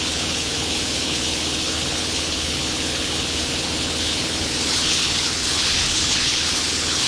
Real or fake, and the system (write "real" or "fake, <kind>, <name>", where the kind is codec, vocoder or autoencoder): fake, codec, HILCodec